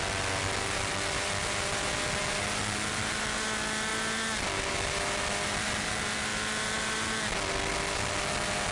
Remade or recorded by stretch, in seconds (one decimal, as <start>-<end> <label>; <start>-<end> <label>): 0.0-8.7 recorded